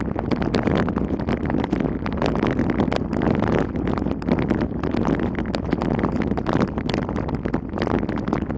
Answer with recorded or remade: recorded